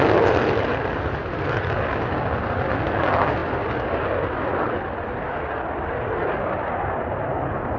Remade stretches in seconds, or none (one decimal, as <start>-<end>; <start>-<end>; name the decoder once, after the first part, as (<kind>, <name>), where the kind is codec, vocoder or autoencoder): none